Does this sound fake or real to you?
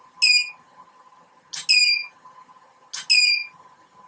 real